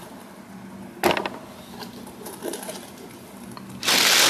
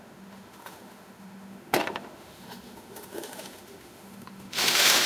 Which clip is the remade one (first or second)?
second